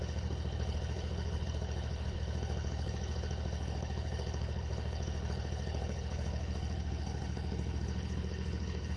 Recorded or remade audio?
remade